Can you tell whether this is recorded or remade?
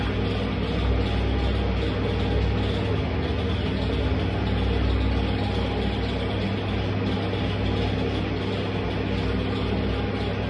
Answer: recorded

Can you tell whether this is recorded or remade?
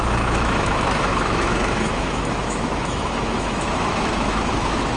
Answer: remade